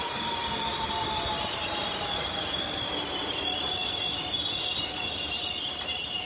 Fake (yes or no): no